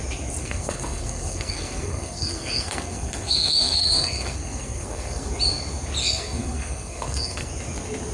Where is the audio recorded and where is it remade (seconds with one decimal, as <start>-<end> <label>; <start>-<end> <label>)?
0.0-0.4 recorded; 0.4-5.3 remade; 5.3-6.0 recorded; 6.0-7.5 remade; 7.5-8.1 recorded